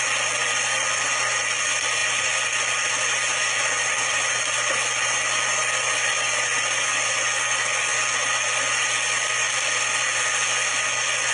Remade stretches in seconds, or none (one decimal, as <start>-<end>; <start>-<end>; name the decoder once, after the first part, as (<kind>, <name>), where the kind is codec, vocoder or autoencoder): none